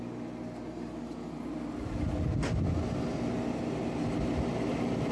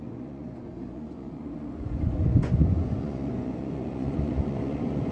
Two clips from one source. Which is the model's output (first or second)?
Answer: second